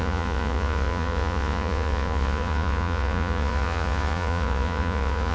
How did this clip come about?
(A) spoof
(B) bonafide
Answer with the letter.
A